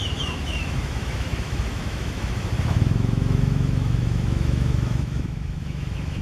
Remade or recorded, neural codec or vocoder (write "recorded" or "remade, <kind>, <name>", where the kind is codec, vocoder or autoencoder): remade, autoencoder, DAC-VAE